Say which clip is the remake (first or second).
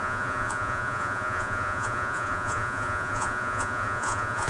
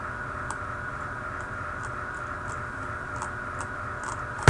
first